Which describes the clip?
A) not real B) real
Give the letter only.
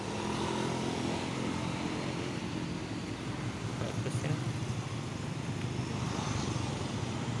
B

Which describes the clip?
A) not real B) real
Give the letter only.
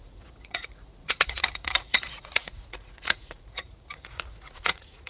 A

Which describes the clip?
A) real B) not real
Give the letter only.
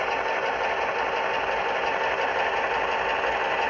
A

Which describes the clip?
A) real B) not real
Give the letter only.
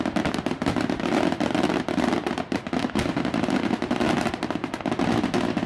A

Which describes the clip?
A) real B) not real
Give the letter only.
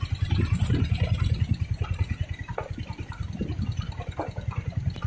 A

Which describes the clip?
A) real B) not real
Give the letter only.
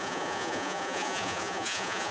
B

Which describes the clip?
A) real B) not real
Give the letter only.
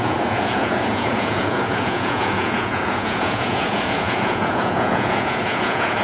B